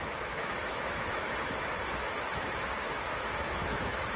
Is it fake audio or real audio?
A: fake